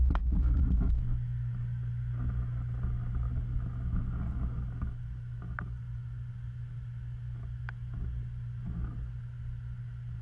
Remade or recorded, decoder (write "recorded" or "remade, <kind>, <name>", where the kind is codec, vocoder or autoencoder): recorded